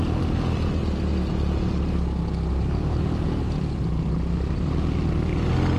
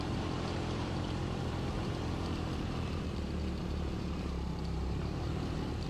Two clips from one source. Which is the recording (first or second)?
first